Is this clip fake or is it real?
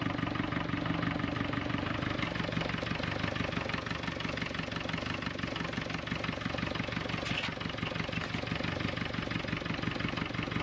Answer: real